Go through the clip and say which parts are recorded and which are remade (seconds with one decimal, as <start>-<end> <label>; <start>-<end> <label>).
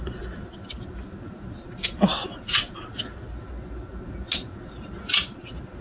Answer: 0.0-5.8 recorded